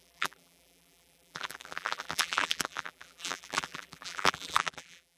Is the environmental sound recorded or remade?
remade